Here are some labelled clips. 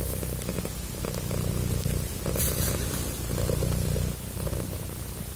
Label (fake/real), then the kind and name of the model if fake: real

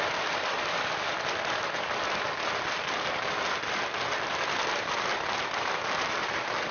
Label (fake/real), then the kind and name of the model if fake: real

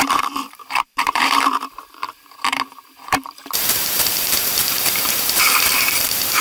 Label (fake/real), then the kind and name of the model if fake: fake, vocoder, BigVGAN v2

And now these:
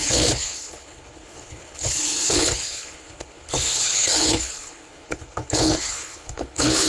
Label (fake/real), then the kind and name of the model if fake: fake, codec, HILCodec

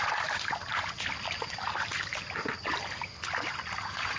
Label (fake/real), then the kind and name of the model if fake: real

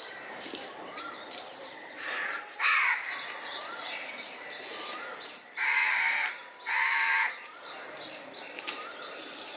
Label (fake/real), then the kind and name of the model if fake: fake, vocoder, BigVGAN v2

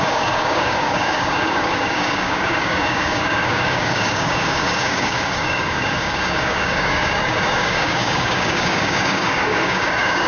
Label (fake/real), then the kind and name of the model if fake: fake, codec, DAC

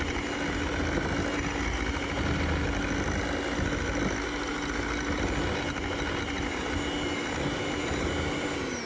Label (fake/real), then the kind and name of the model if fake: real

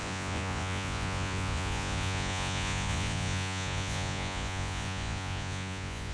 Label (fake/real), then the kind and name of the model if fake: fake, vocoder, Vocos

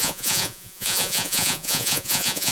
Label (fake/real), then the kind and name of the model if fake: fake, vocoder, Vocos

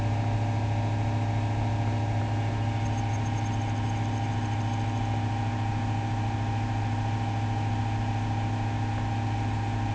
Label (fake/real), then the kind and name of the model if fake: real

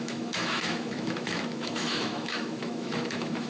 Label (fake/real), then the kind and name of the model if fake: fake, autoencoder, DAC-VAE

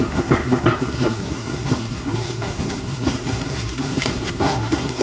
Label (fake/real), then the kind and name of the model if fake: fake, codec, SNAC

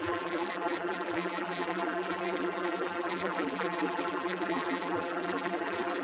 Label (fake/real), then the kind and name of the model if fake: fake, vocoder, BigVGAN v2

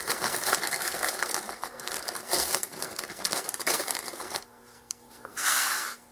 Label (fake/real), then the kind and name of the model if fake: fake, codec, SNAC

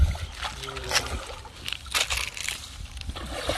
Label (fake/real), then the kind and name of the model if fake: real